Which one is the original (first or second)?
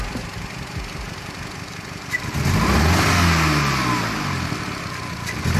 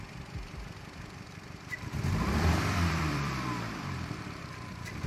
first